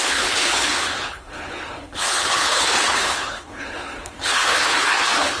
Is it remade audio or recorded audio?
remade